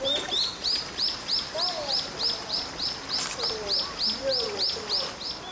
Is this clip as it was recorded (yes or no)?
yes